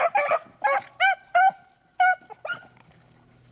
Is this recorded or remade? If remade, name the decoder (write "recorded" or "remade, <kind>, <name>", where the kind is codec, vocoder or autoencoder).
recorded